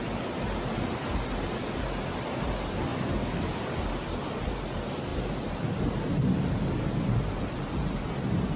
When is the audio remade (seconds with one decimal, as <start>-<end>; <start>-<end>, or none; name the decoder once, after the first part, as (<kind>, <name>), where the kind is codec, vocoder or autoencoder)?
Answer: none